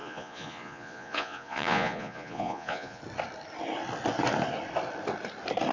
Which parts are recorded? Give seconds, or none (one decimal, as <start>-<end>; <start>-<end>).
3.0-5.7